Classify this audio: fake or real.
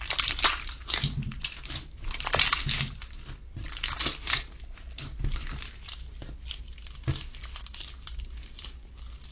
real